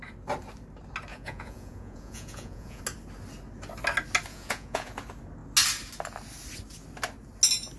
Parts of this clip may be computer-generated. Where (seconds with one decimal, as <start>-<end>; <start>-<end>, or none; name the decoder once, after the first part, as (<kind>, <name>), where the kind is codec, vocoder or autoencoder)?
1.1-2.8 (vocoder, Vocos); 4.3-4.9